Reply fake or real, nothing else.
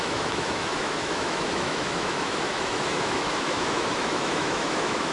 fake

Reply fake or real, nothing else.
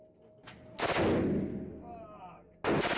real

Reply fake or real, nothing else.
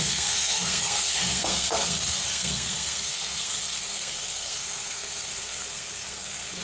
fake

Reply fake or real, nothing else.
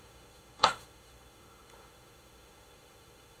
fake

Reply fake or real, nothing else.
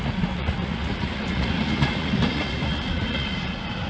fake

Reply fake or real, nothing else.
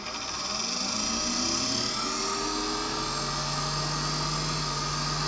real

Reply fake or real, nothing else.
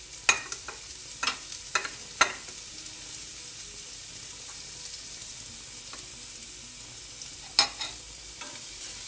real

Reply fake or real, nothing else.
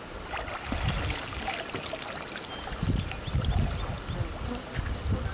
real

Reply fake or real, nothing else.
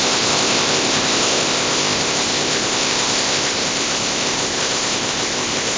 fake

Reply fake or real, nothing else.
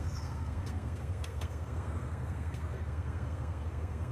fake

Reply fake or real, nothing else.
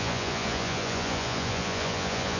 fake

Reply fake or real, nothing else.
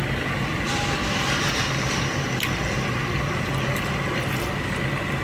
real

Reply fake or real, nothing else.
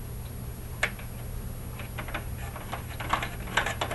real